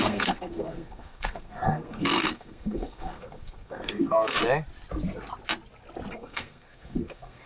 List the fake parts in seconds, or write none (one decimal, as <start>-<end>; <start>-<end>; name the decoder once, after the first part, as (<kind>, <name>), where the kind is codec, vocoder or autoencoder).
0.0-4.4 (codec, SNAC); 6.1-7.5